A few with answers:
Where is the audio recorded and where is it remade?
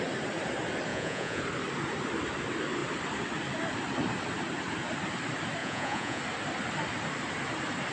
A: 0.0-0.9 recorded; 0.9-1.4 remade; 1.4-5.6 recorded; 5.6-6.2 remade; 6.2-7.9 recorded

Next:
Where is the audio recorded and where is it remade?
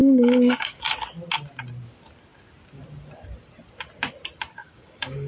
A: 0.0-0.8 remade; 0.8-4.6 recorded; 4.6-5.3 remade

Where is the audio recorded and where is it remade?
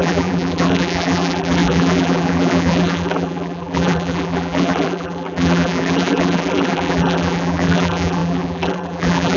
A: 0.0-9.4 remade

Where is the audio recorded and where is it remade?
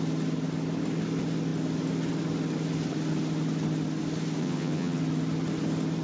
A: 0.0-4.4 recorded; 4.4-5.0 remade; 5.0-6.0 recorded